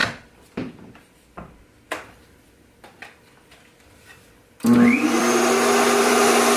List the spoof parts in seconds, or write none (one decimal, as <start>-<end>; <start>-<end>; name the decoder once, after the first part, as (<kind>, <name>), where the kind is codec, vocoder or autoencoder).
0.0-1.9 (vocoder, BigVGAN v2); 4.4-6.6